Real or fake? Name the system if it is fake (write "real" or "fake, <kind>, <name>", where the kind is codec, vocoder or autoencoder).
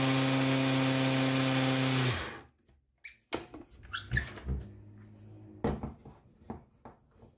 real